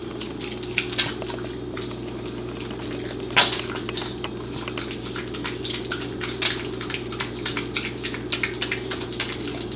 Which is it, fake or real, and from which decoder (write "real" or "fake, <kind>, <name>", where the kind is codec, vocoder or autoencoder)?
real